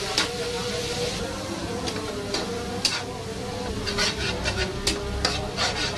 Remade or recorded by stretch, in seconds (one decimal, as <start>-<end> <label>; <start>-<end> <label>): 0.0-6.0 recorded